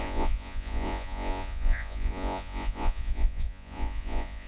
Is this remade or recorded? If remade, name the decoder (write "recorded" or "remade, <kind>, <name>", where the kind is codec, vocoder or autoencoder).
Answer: remade, vocoder, Vocos